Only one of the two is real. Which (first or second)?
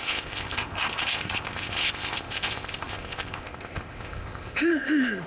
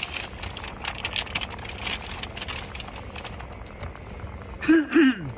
second